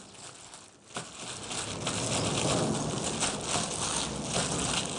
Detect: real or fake real